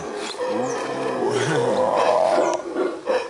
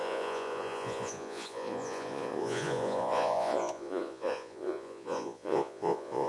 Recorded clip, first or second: first